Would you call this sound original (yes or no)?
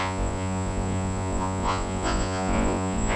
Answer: no